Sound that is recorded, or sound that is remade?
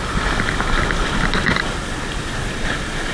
recorded